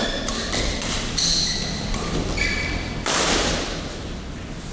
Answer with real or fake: fake